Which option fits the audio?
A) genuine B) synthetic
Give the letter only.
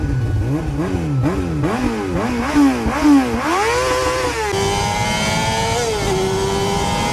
A